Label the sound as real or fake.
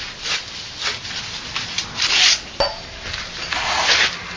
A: real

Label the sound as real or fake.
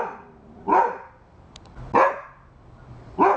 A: real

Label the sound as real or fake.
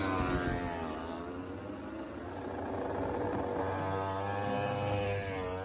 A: real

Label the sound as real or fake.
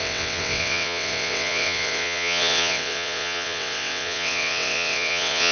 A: fake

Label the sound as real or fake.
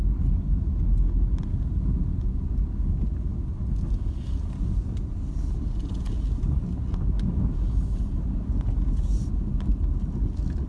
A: real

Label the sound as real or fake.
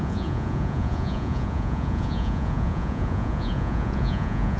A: fake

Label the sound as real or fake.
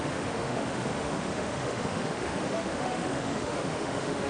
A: fake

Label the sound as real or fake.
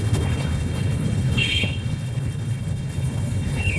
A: fake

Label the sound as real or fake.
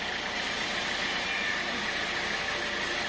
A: real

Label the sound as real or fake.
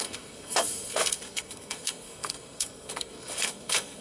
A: fake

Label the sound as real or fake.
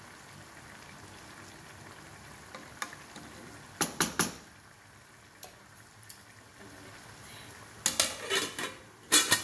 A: real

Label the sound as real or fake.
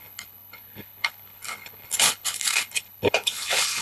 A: fake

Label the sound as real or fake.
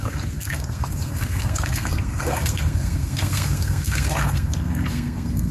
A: fake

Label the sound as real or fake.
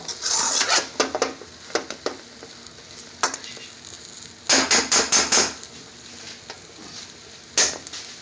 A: real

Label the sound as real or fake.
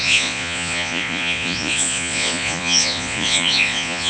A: fake